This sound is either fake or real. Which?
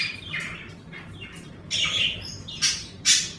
fake